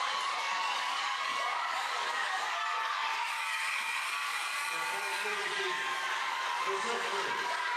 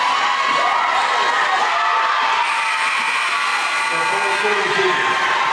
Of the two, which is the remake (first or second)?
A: first